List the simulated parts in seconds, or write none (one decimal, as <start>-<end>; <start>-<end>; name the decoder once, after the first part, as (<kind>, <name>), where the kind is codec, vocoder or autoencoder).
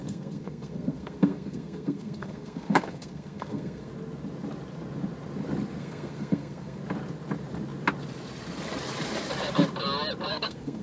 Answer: 0.0-3.9 (codec, SNAC); 5.8-6.8; 10.3-10.8